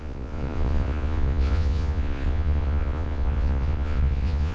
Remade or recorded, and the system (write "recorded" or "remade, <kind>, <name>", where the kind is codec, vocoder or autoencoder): remade, vocoder, Vocos